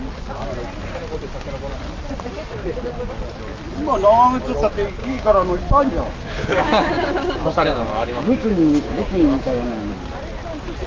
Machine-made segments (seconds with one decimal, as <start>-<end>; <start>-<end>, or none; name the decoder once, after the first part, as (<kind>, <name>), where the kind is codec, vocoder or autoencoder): 5.0-9.9 (codec, DAC)